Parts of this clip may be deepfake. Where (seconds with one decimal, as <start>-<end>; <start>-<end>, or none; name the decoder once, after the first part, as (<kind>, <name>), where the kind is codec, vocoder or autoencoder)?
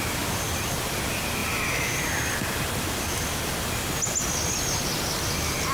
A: none